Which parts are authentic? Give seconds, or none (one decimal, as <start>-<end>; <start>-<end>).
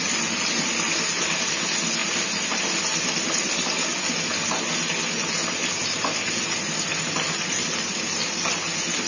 0.0-9.1